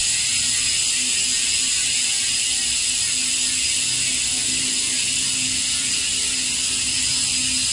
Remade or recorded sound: recorded